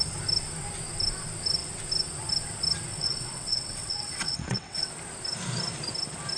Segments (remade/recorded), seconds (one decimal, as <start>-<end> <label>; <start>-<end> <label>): 0.0-2.9 recorded; 2.9-4.9 remade; 4.9-6.4 recorded